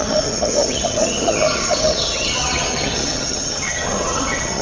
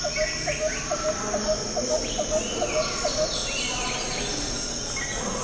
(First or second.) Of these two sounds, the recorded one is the second